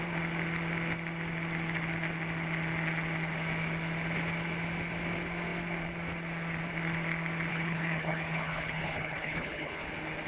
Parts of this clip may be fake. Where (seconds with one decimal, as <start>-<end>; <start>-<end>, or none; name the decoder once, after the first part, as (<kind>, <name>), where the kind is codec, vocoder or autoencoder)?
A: 7.5-9.9 (codec, HILCodec)